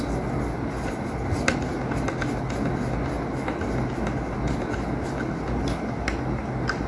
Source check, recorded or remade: recorded